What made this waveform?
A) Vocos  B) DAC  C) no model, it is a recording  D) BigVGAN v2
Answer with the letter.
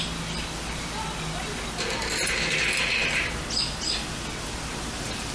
C